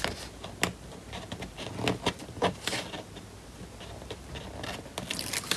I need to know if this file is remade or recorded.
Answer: recorded